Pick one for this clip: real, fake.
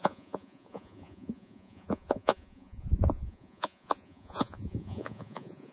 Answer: fake